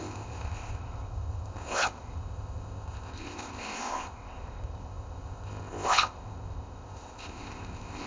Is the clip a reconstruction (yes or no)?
yes